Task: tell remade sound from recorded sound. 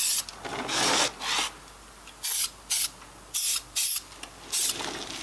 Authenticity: recorded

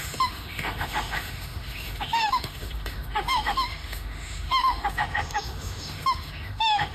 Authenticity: remade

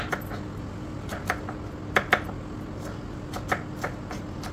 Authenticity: recorded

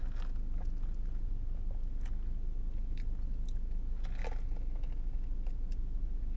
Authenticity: recorded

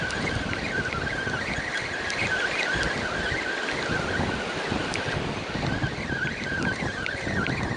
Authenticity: recorded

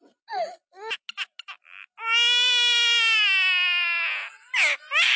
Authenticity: recorded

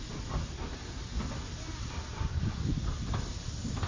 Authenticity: recorded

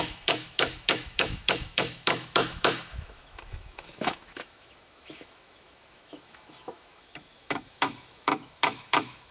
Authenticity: remade